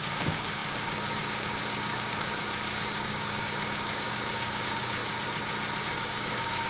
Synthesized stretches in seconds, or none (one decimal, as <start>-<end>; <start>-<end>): 0.0-5.0; 5.8-6.7